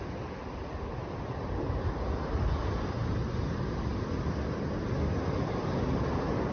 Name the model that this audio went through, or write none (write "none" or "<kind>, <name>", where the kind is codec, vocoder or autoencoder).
none